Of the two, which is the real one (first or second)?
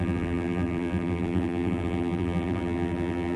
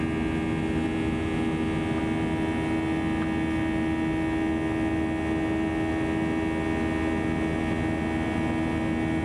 second